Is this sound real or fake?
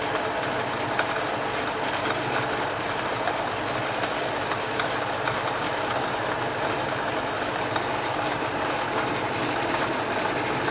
real